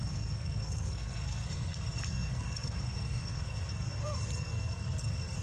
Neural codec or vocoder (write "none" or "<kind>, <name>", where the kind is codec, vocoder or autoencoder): codec, SNAC